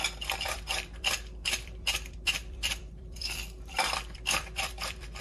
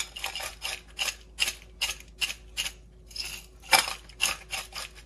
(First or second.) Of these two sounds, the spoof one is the first